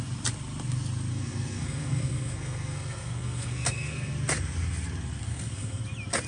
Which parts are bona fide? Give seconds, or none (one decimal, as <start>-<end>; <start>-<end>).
0.0-1.1; 4.1-5.3; 5.8-6.3